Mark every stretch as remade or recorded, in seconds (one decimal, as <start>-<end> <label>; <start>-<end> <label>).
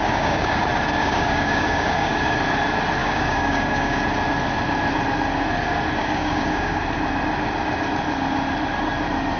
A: 0.0-0.6 remade; 0.6-1.0 recorded; 1.0-2.4 remade; 2.4-3.0 recorded; 3.0-4.0 remade; 4.0-6.0 recorded; 6.0-6.8 remade; 6.8-9.4 recorded